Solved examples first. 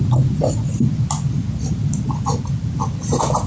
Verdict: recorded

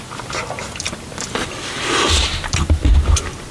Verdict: recorded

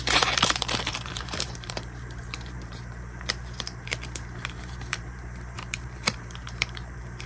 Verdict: remade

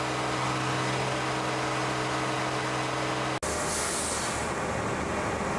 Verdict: recorded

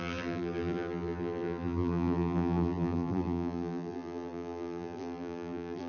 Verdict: remade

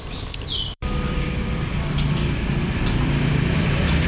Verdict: remade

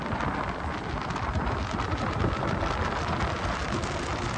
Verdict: recorded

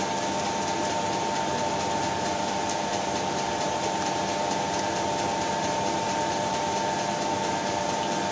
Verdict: remade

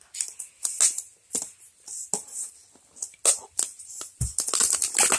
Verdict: recorded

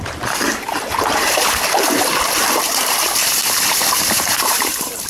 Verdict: remade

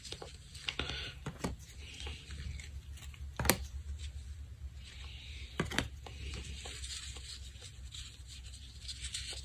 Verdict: recorded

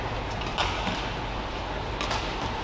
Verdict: recorded